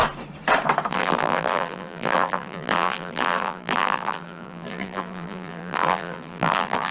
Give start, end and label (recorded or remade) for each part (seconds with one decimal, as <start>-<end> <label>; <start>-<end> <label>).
0.0-0.9 recorded; 0.9-6.9 remade

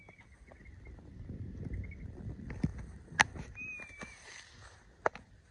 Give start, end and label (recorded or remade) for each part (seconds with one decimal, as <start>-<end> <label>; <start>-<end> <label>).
0.0-5.5 recorded

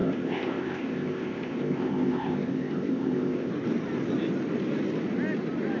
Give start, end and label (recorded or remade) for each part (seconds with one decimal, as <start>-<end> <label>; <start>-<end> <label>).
0.0-3.5 remade; 3.5-5.8 recorded

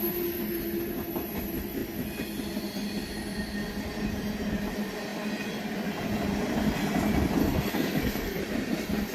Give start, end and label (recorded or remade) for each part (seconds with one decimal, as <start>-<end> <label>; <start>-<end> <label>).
0.0-7.4 recorded; 7.4-8.4 remade; 8.4-9.1 recorded